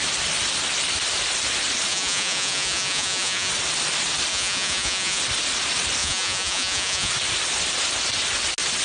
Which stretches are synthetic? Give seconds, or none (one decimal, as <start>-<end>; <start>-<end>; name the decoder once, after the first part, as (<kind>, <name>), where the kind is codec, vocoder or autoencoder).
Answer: 1.9-3.5 (vocoder, Vocos); 4.3-5.2; 6.0-7.1